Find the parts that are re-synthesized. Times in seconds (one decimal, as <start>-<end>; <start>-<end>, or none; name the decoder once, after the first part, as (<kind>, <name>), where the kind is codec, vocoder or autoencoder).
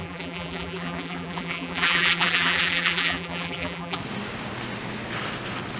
0.0-4.0 (vocoder, BigVGAN v2)